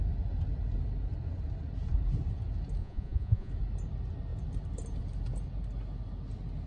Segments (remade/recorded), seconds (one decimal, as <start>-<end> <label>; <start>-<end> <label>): 0.0-2.8 recorded; 2.8-3.5 remade; 3.5-6.7 recorded